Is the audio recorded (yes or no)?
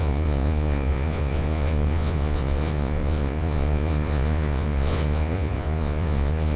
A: no